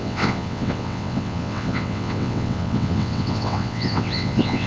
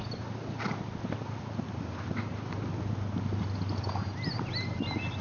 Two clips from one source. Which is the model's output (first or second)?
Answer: first